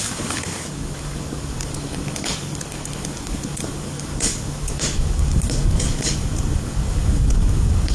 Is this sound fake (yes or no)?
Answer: yes